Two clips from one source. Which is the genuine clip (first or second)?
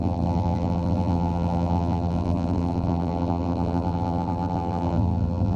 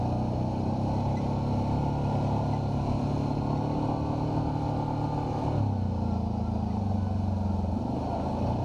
second